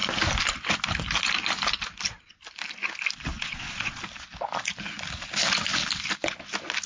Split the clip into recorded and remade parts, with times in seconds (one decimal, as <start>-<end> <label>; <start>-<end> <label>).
0.0-3.3 recorded; 3.3-4.0 remade; 4.0-6.9 recorded

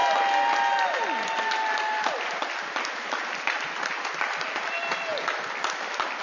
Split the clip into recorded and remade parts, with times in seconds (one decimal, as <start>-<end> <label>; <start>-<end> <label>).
0.0-6.2 recorded